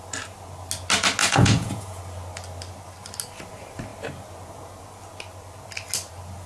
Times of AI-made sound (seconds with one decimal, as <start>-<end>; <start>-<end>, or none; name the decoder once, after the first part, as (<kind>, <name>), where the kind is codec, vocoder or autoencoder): 1.2-2.0 (vocoder, Vocos)